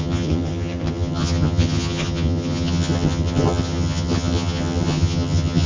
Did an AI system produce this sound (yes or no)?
yes